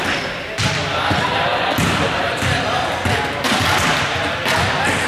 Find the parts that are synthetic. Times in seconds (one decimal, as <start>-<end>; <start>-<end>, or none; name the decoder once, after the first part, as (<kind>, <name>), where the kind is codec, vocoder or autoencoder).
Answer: none